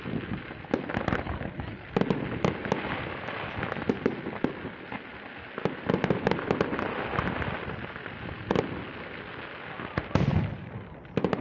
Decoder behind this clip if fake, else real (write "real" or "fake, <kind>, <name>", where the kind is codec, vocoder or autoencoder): real